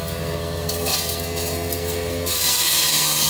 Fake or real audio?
fake